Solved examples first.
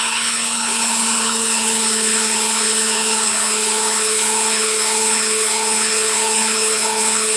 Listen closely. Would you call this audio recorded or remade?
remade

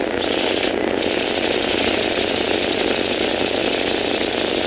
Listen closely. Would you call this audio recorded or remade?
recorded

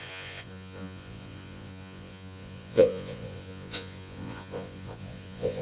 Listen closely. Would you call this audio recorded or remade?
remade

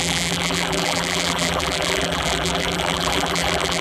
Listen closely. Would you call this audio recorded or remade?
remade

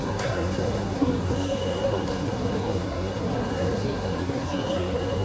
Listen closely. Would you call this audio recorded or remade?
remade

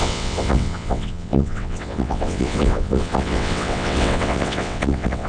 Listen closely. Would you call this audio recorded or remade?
remade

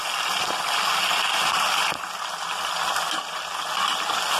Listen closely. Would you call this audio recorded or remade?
recorded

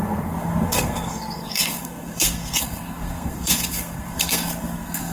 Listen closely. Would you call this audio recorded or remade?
remade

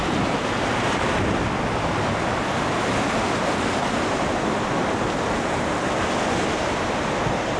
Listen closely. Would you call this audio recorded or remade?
recorded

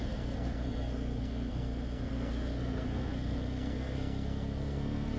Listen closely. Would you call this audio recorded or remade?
remade